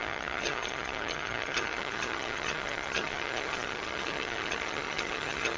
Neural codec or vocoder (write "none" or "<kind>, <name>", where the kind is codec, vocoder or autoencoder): vocoder, HiFi-GAN